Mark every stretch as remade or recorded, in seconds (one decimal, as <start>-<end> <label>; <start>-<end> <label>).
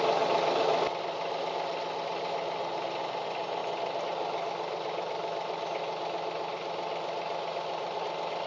0.0-8.5 recorded